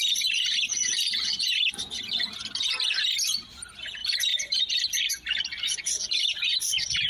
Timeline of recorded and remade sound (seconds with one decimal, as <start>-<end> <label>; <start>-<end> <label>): 0.0-4.0 recorded; 4.0-4.7 remade; 4.7-7.1 recorded